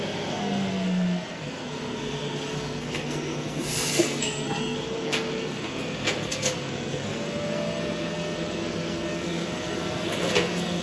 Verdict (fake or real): fake